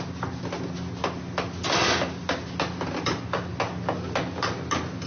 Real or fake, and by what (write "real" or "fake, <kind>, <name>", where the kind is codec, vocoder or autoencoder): real